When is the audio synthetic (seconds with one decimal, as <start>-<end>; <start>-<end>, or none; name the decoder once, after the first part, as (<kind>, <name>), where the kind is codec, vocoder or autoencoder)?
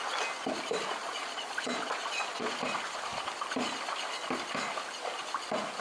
1.0-2.5 (vocoder, Vocos)